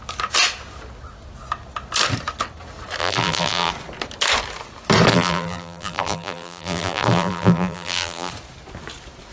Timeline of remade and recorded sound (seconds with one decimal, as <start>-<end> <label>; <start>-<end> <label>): 0.0-3.0 recorded; 3.0-3.7 remade; 3.7-5.1 recorded; 5.1-8.3 remade; 8.3-9.3 recorded